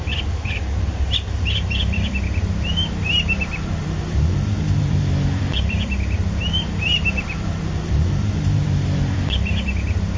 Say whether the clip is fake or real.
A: fake